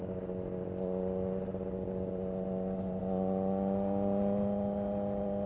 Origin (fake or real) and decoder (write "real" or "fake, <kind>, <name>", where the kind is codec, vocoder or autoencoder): real